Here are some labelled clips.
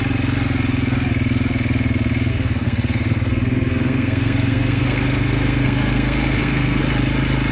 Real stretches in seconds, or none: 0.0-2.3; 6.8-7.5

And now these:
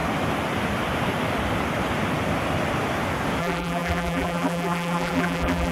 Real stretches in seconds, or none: 0.0-3.4

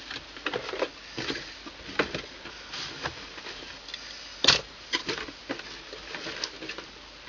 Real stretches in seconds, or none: 0.0-4.3; 5.4-7.3

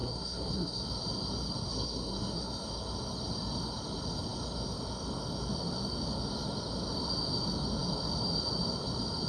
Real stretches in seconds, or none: 0.8-1.7; 2.7-9.3

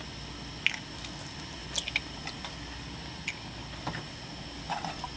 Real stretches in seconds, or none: 0.0-5.2

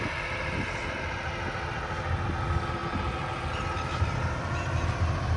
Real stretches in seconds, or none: 0.0-5.4

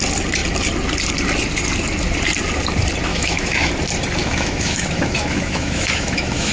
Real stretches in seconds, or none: 0.0-3.1; 3.7-4.2

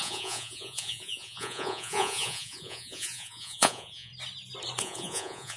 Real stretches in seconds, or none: 4.1-4.8